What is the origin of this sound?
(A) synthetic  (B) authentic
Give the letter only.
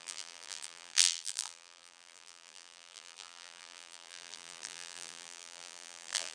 A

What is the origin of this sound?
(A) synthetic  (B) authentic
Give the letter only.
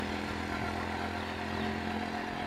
B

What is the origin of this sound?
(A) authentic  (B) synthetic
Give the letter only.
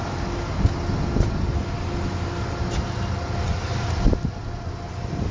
A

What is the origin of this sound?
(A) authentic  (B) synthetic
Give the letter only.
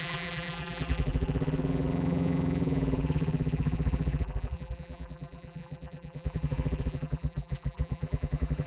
B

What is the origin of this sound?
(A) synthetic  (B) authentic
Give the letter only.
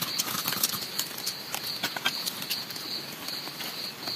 B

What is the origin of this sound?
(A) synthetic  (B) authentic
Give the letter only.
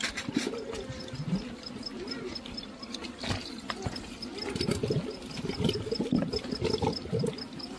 B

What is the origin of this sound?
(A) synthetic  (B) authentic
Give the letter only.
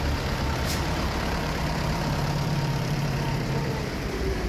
A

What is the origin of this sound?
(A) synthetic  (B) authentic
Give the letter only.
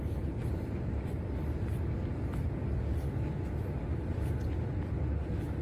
B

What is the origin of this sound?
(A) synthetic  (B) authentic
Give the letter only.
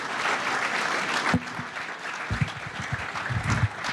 B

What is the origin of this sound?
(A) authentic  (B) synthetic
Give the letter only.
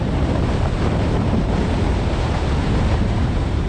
B